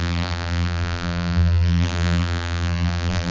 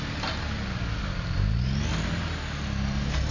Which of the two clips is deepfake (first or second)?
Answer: first